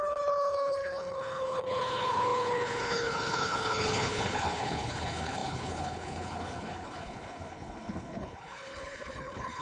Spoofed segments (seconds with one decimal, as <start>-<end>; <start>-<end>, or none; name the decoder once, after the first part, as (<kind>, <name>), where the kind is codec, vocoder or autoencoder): 0.0-9.6 (codec, HILCodec)